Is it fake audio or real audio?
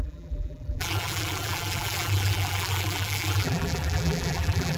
fake